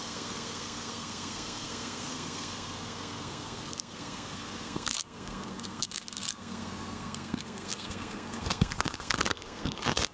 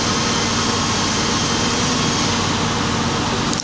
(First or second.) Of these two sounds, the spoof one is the first